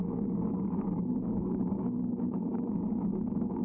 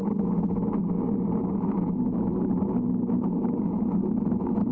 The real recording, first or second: second